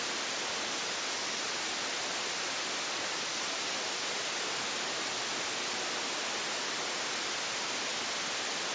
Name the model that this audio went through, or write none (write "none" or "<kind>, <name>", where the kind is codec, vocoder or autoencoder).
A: none